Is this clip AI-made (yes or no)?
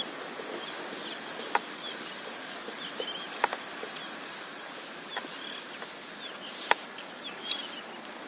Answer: no